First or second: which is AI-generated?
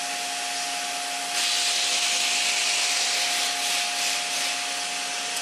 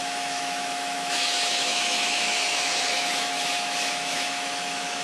second